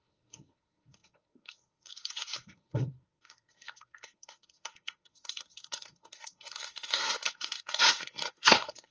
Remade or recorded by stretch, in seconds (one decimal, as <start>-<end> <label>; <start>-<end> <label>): 0.0-8.9 remade